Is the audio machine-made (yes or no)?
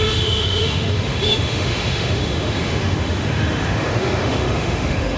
yes